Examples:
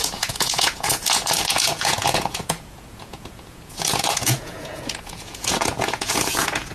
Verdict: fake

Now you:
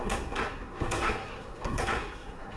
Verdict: fake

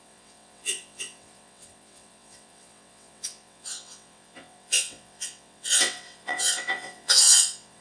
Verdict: fake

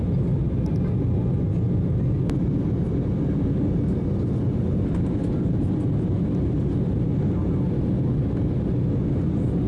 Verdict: real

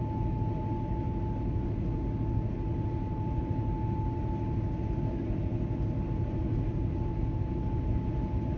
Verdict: real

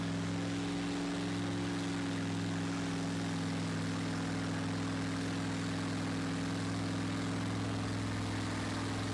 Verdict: real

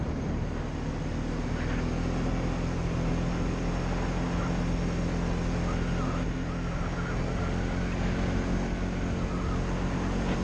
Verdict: real